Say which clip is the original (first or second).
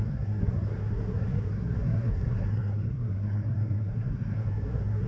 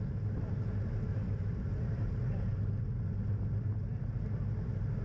second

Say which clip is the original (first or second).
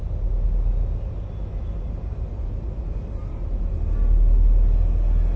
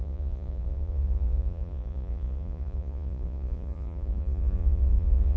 first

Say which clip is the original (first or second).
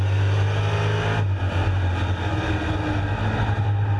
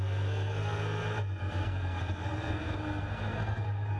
first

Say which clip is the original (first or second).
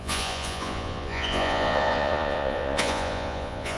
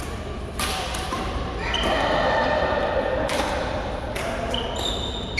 second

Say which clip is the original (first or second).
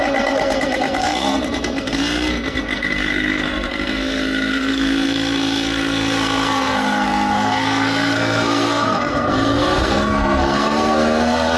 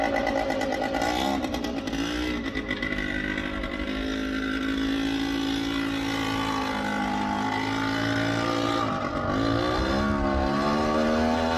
second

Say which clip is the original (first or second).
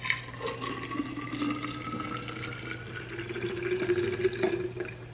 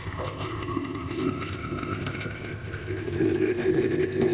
first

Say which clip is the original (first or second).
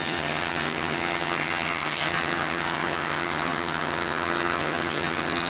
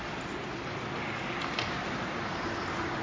second